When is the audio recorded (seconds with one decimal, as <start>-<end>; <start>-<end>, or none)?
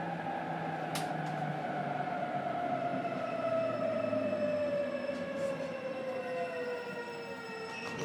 0.0-8.0